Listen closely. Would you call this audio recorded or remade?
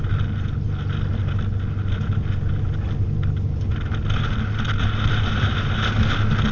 recorded